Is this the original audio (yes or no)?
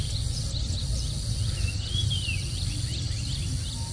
yes